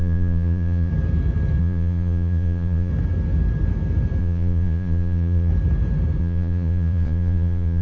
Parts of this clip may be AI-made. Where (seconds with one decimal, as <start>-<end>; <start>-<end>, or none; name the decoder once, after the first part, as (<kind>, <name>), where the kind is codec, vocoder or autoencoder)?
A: 0.0-0.9 (vocoder, Vocos); 1.6-2.9; 4.2-5.5; 6.2-7.8